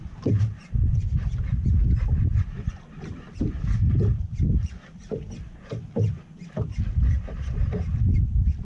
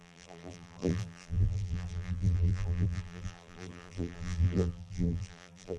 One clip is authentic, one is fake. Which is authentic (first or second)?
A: first